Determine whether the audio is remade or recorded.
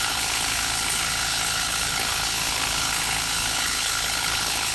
remade